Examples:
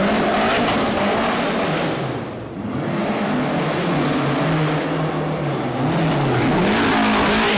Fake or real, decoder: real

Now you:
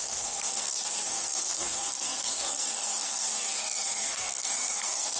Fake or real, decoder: fake, codec, SNAC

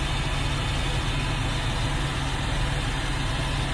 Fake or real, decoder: real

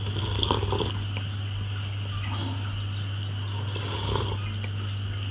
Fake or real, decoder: real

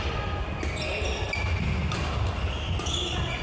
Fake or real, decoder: real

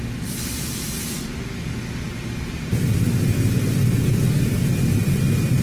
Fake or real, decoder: fake, vocoder, BigVGAN v2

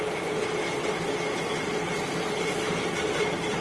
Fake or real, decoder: real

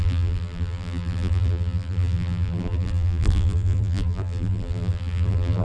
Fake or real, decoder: fake, vocoder, BigVGAN v2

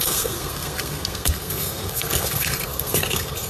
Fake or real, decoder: fake, codec, SNAC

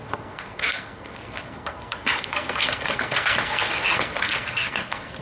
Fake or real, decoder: fake, codec, SNAC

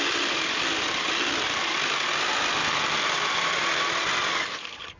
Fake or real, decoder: real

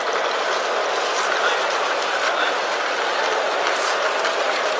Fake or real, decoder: real